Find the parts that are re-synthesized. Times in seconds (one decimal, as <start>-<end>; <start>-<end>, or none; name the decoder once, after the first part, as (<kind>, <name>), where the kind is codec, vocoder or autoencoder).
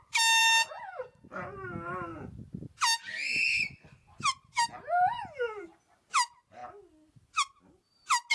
none